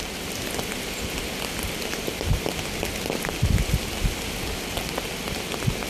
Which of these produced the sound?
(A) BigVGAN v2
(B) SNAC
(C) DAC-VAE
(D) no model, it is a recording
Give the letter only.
D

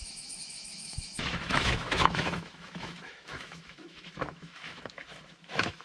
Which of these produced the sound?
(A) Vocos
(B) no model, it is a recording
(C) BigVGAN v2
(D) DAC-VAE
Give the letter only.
D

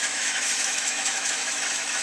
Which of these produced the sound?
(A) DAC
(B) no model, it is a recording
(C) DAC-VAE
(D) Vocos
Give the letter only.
C